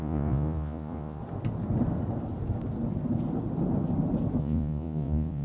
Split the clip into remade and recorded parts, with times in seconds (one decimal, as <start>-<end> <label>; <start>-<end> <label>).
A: 0.0-1.2 remade; 1.2-4.4 recorded; 4.4-5.4 remade

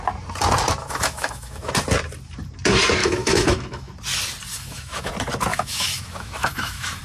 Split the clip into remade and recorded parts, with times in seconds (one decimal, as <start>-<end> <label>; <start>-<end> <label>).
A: 0.0-0.8 recorded; 0.8-1.7 remade; 1.7-3.0 recorded; 3.0-3.9 remade; 3.9-4.5 recorded; 4.5-5.1 remade; 5.1-5.5 recorded; 5.5-7.0 remade